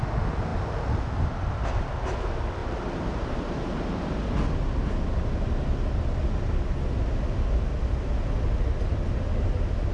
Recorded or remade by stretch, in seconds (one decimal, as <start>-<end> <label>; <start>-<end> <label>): 0.0-2.6 recorded; 2.6-4.2 remade; 4.2-9.9 recorded